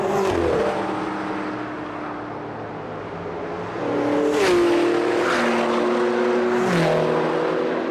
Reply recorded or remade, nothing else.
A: recorded